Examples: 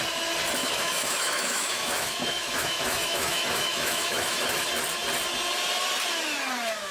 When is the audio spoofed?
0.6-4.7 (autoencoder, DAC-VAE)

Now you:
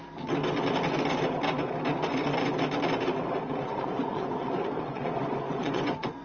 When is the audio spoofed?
3.6-6.2 (vocoder, Vocos)

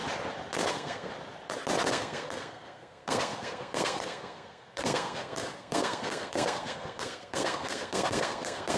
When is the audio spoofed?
0.7-1.1 (codec, SNAC); 1.9-8.8

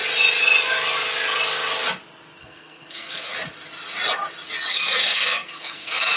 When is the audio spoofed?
2.4-3.3 (codec, SNAC); 4.7-6.2

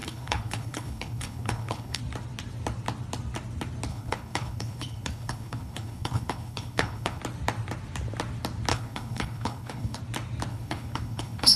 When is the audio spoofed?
0.0-2.0 (codec, HILCodec); 3.9-7.2; 8.7-10.0; 10.5-11.6